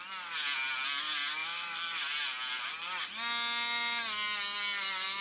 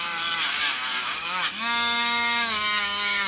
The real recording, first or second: first